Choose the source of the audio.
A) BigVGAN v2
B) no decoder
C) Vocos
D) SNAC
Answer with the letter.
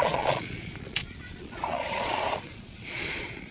C